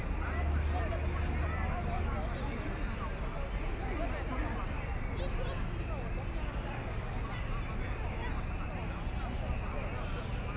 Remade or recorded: recorded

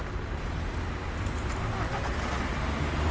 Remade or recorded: recorded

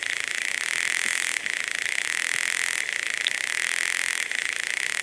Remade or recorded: recorded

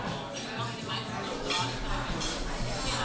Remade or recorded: recorded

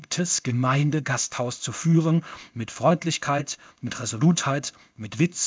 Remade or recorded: remade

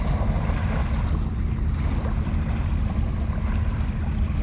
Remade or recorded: recorded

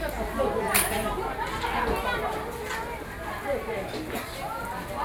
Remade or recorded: recorded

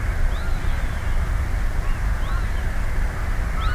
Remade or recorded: recorded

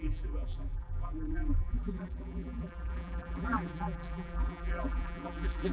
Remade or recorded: remade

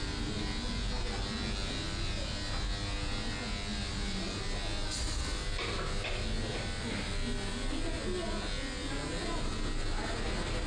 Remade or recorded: recorded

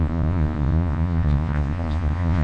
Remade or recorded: remade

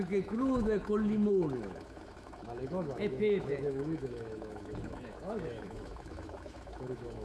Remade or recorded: remade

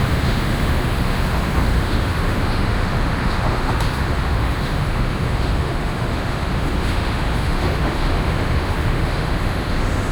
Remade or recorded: remade